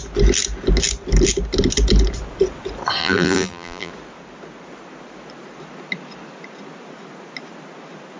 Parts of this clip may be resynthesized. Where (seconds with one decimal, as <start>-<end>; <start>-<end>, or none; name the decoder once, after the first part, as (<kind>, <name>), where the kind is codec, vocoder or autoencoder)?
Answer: 3.0-3.9 (vocoder, BigVGAN v2)